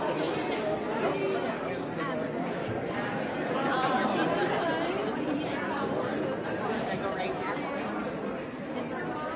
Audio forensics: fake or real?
real